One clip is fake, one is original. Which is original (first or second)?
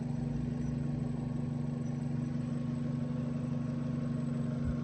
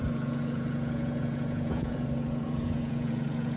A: first